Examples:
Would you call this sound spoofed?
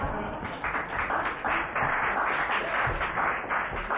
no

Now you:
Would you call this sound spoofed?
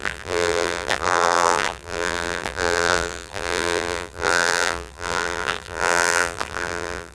yes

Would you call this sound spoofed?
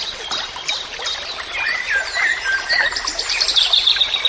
no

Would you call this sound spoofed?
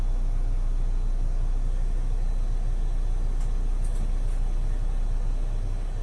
no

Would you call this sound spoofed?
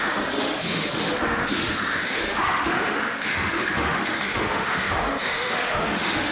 yes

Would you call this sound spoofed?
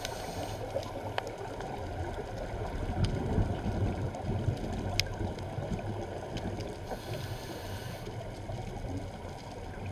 no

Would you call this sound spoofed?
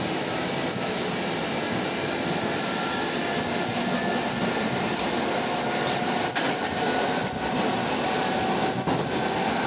no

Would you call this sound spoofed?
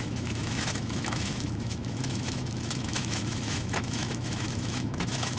yes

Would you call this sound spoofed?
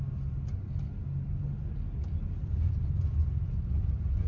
no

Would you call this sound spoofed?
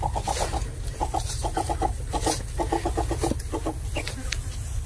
no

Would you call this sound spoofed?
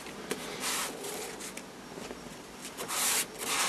no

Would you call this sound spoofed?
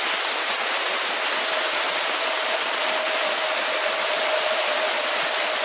no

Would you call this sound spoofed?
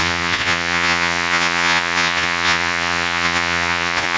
yes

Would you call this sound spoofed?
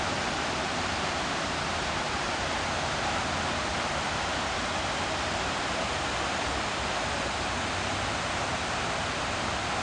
no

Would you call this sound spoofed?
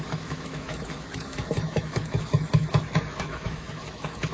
yes